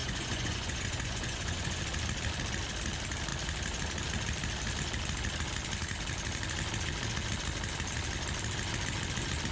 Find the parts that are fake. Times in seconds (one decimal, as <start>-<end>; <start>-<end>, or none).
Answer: 0.0-1.8